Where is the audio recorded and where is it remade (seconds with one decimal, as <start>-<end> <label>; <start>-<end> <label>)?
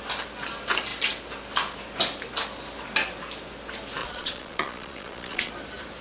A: 0.0-4.0 recorded; 4.0-5.5 remade; 5.5-6.0 recorded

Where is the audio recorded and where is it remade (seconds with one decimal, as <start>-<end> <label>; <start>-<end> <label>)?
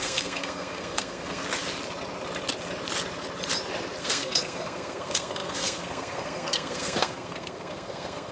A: 0.0-1.4 remade; 1.4-4.0 recorded; 4.0-8.3 remade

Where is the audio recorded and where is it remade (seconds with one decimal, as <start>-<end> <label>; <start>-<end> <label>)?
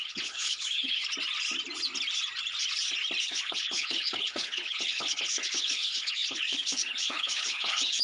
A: 0.0-1.0 remade; 1.0-3.2 recorded; 3.2-8.0 remade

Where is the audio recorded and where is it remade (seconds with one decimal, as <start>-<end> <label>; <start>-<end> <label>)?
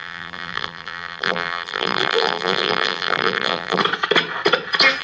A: 0.0-3.8 remade; 3.8-5.0 recorded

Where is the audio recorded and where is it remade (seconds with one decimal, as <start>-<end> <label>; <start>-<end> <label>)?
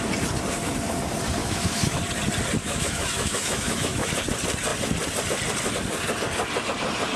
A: 0.0-1.4 recorded; 1.4-2.0 remade; 2.0-2.6 recorded; 2.6-4.1 remade; 4.1-7.2 recorded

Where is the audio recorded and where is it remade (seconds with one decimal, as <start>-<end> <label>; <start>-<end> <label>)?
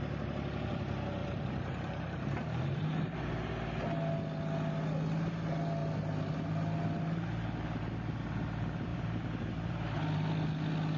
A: 0.0-1.2 recorded; 1.2-3.5 remade; 3.5-11.0 recorded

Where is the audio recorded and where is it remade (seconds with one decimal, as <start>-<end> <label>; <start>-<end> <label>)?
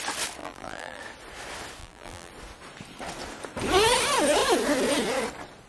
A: 0.0-0.4 recorded; 0.4-1.0 remade; 1.0-1.8 recorded; 1.8-2.3 remade; 2.3-5.7 recorded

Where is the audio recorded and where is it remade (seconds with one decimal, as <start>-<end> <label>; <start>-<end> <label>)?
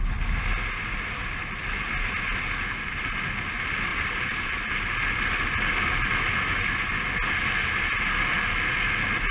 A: 0.0-3.9 recorded; 3.9-4.6 remade; 4.6-6.5 recorded; 6.5-7.4 remade; 7.4-9.3 recorded